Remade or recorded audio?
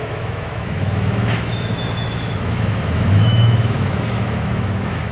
remade